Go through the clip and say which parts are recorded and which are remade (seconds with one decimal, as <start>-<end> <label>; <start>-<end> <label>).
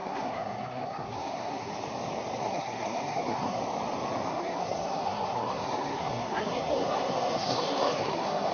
0.0-1.7 remade; 1.7-2.4 recorded; 2.4-3.6 remade; 3.6-4.3 recorded; 4.3-8.5 remade